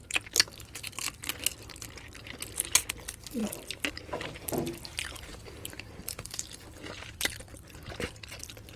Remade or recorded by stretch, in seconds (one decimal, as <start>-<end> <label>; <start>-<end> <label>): 0.0-5.3 recorded; 5.3-8.4 remade; 8.4-8.8 recorded